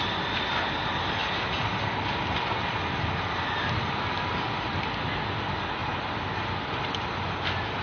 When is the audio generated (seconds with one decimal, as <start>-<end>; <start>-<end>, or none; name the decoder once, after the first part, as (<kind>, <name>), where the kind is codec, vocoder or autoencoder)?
none